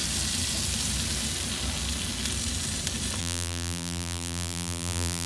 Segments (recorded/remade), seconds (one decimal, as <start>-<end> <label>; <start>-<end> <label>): 0.0-3.2 recorded; 3.2-5.3 remade